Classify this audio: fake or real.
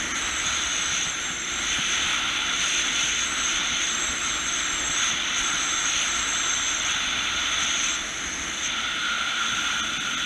real